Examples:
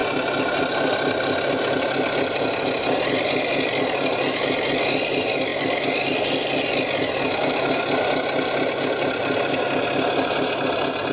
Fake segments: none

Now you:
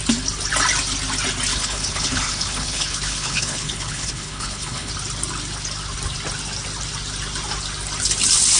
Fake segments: 1.5-4.9 (codec, HILCodec)

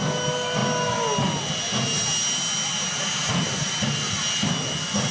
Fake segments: 3.2-3.7 (vocoder, BigVGAN v2)

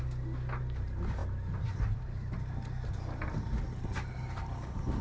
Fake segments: none